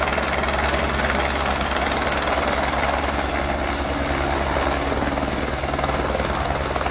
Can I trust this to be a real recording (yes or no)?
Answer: yes